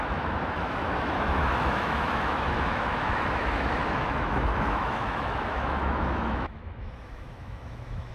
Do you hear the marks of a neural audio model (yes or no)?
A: yes